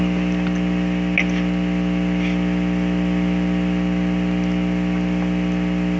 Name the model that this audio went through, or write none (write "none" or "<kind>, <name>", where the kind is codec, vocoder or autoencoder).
none